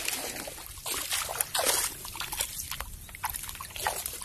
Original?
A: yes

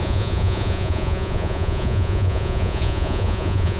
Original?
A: no